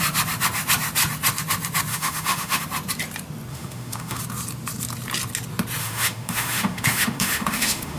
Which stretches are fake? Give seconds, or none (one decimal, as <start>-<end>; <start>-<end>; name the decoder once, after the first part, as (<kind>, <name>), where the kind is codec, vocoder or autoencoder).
1.9-2.6 (autoencoder, DAC-VAE); 3.5-4.2; 5.8-8.0

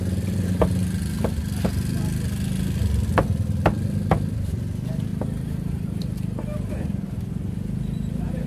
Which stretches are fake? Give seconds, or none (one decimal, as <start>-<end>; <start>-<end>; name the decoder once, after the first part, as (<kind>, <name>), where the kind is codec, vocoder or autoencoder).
5.1-6.0 (vocoder, BigVGAN v2)

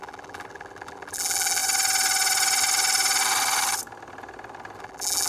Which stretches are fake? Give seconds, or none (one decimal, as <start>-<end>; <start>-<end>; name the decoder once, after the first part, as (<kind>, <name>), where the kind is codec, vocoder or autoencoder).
0.0-1.6 (vocoder, BigVGAN v2); 4.8-5.3

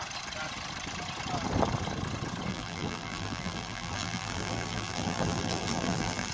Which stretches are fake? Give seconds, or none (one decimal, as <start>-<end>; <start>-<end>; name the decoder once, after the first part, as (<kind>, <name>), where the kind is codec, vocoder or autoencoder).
2.5-6.3 (vocoder, BigVGAN v2)

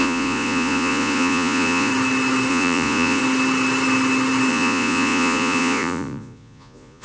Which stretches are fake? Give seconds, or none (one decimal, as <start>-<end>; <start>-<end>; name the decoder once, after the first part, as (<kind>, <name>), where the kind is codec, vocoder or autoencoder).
0.0-1.9 (vocoder, Vocos); 2.5-3.2; 4.5-7.0